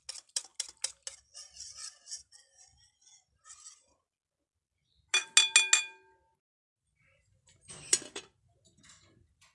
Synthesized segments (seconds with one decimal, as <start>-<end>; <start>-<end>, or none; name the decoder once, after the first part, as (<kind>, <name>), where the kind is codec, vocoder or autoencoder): 6.7-8.8 (vocoder, BigVGAN v2)